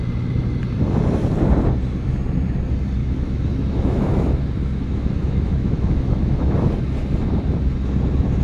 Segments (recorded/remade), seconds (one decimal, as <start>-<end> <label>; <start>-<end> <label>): 0.0-3.0 recorded; 3.0-6.7 remade; 6.7-8.4 recorded

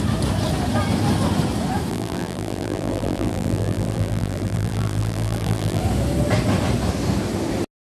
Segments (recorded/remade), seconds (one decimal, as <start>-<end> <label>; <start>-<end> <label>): 0.0-1.9 recorded; 1.9-5.8 remade; 5.8-7.8 recorded

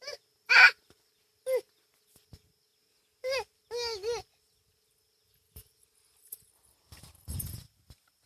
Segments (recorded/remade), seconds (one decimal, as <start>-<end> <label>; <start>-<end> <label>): 0.0-8.3 recorded

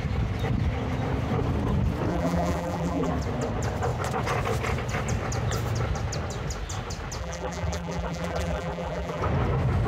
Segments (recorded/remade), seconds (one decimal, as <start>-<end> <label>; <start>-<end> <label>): 0.0-2.1 recorded; 2.1-3.1 remade; 3.1-7.2 recorded; 7.2-9.2 remade; 9.2-9.9 recorded

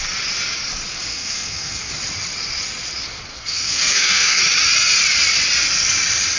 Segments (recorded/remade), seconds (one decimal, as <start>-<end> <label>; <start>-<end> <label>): 0.0-1.1 recorded; 1.1-1.9 remade; 1.9-3.3 recorded; 3.3-4.4 remade; 4.4-6.4 recorded

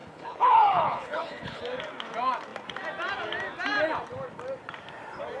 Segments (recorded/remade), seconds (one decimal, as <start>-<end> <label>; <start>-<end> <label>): 0.0-1.6 remade; 1.6-5.4 recorded

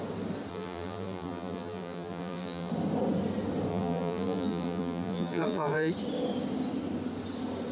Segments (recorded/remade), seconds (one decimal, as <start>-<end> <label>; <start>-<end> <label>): 0.0-0.5 recorded; 0.5-2.7 remade; 2.7-3.7 recorded; 3.7-5.9 remade; 5.9-7.7 recorded

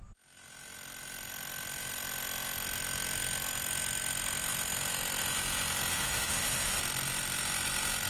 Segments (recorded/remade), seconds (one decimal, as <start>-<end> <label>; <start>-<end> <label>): 0.0-5.9 recorded; 5.9-6.8 remade; 6.8-8.1 recorded